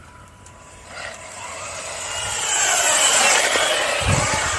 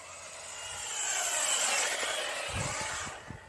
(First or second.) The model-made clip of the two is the first